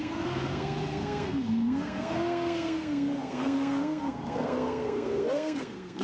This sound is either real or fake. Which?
fake